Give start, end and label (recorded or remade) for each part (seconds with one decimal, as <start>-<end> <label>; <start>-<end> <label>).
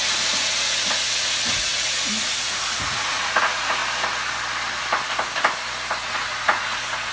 0.0-3.8 remade; 3.8-6.0 recorded; 6.0-7.1 remade